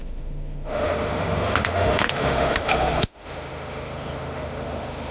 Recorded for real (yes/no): no